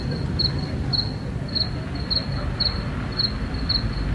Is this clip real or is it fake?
real